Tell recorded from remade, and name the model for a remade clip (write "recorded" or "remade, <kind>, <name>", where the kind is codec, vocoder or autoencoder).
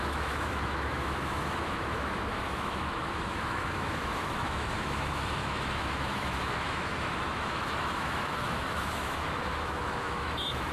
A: remade, autoencoder, DAC-VAE